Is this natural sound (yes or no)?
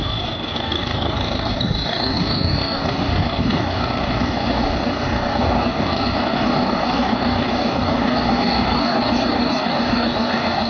no